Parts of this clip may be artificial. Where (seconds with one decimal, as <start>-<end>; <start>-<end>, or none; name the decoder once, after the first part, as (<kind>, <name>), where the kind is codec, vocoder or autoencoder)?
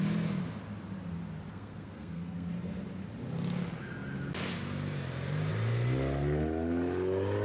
1.5-2.5 (codec, SNAC)